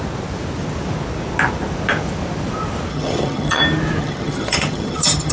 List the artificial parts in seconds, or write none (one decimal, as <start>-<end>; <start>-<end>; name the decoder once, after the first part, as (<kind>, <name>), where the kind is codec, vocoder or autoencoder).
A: 2.9-3.6 (vocoder, HiFi-GAN); 4.0-5.3